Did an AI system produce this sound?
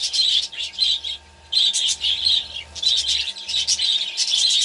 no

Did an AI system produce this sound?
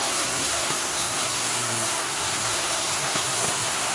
yes